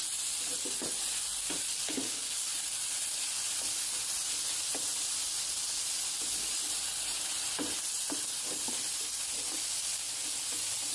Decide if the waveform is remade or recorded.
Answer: recorded